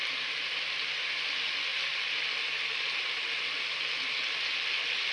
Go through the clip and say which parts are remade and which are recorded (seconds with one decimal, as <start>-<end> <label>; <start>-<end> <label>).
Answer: 0.0-5.1 recorded